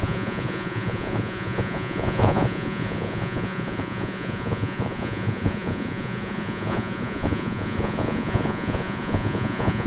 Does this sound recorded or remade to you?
remade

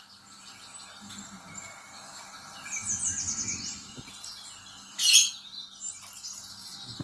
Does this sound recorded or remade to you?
recorded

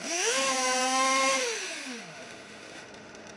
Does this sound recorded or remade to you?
remade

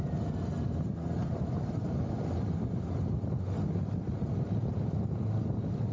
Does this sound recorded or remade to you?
recorded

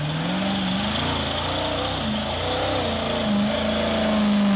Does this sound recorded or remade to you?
recorded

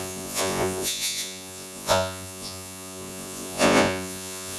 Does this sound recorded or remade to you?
remade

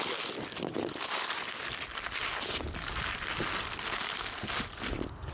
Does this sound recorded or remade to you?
recorded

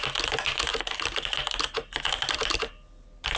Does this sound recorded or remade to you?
recorded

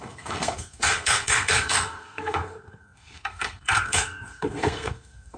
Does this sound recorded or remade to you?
remade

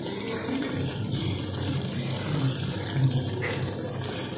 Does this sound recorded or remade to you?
recorded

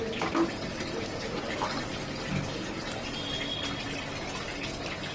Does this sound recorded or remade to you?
recorded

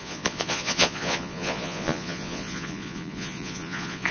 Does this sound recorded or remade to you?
remade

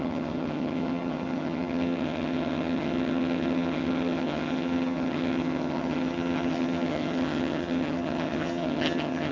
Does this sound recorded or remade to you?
remade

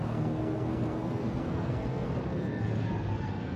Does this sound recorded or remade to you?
remade